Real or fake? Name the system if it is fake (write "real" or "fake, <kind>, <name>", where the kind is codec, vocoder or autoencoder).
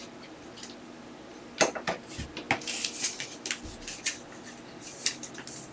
real